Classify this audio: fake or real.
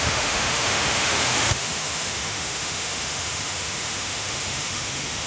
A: fake